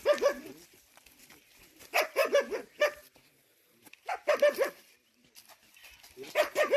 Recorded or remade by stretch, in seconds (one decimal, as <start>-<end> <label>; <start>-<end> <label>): 0.0-2.2 remade; 2.2-6.3 recorded; 6.3-6.8 remade